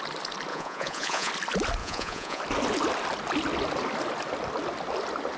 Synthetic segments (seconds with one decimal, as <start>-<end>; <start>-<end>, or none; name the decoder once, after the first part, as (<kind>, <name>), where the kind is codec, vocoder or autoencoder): 0.5-1.3 (vocoder, Vocos); 1.8-2.4

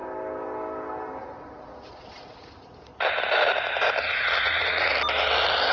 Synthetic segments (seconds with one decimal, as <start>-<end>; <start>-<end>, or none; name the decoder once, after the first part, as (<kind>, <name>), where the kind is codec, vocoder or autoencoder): 1.2-2.9 (vocoder, Vocos); 4.0-4.9

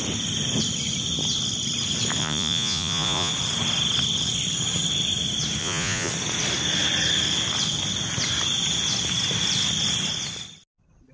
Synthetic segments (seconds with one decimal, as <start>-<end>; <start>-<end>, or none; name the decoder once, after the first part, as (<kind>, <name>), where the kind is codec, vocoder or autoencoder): 2.2-3.3 (vocoder, Vocos); 5.6-6.1

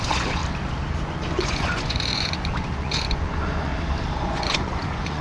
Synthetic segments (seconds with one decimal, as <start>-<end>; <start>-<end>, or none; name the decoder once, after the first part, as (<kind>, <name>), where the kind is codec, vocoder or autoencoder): 0.0-0.4 (vocoder, Vocos); 1.1-3.7; 4.2-5.2

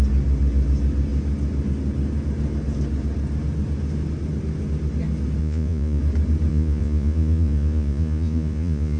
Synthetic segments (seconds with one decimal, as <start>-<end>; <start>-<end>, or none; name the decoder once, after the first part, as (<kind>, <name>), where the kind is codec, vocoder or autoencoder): 5.4-6.0 (vocoder, Vocos); 6.5-9.0

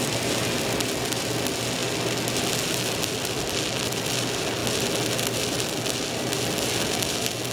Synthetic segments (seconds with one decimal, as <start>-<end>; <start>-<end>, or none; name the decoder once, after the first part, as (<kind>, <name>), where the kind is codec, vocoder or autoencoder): none

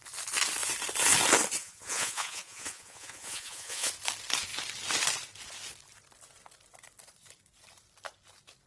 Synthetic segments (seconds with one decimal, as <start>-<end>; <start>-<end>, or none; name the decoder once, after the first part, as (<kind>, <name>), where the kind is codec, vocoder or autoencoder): 1.6-3.9 (vocoder, Vocos)